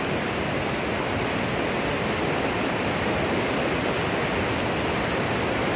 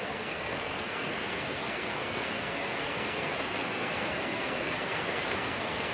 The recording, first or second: first